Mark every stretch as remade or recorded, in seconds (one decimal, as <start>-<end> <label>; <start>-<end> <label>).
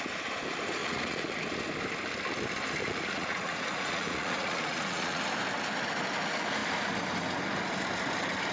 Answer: 0.0-0.8 recorded; 0.8-1.4 remade; 1.4-2.8 recorded; 2.8-5.2 remade; 5.2-8.5 recorded